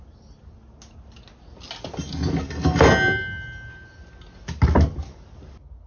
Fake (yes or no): no